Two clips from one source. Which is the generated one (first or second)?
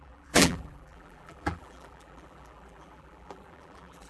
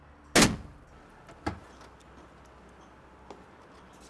first